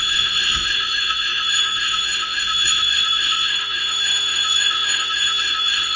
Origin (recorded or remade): remade